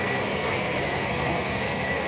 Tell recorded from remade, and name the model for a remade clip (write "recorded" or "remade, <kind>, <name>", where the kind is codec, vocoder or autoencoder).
remade, codec, SNAC